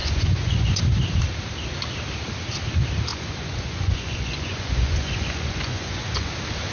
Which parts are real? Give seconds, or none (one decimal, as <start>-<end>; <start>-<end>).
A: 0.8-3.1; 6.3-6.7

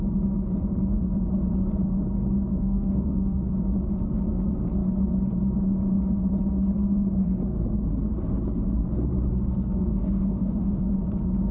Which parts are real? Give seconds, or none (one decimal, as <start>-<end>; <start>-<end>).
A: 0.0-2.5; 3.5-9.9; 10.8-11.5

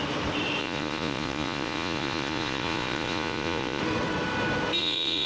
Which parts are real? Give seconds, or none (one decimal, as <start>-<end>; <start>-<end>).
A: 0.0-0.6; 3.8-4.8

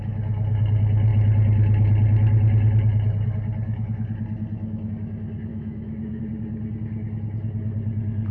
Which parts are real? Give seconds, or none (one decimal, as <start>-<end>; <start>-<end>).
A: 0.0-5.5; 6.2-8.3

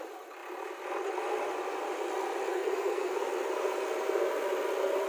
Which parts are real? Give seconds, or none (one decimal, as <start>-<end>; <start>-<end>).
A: 0.0-2.5; 3.2-5.1